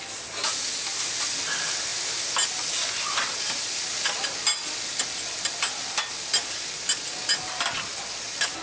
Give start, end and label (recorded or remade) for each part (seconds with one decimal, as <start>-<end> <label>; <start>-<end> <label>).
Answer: 0.0-8.6 recorded